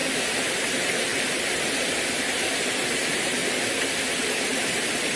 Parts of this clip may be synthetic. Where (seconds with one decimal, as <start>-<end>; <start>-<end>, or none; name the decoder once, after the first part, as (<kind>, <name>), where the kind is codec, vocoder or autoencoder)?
0.5-1.1 (vocoder, BigVGAN v2); 2.7-3.4; 4.1-5.2